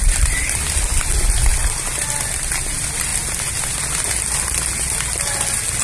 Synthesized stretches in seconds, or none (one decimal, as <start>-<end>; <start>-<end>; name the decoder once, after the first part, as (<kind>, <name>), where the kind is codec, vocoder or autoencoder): none